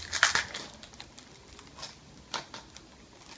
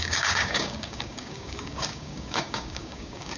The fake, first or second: second